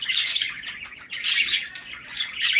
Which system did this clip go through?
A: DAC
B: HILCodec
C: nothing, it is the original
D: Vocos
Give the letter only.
D